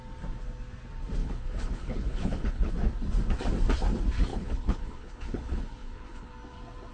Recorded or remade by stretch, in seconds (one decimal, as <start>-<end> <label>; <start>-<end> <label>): 0.0-1.2 recorded; 1.2-2.7 remade; 2.7-4.3 recorded; 4.3-6.3 remade; 6.3-6.9 recorded